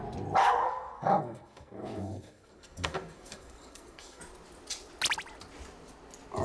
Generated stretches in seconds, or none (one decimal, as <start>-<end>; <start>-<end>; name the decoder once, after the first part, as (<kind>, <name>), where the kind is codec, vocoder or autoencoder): 0.4-4.2 (codec, SNAC)

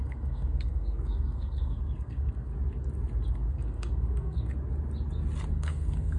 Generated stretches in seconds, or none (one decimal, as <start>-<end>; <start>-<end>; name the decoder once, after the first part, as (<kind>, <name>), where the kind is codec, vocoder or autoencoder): 0.0-2.5 (codec, SNAC); 3.3-4.5; 5.5-6.2